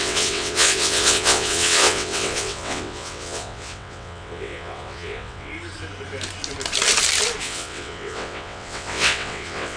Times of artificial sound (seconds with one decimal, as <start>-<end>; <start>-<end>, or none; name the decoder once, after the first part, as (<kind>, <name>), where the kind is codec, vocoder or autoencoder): 0.0-5.5 (vocoder, WaveNeXt); 7.4-9.8